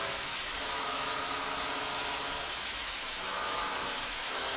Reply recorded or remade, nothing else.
remade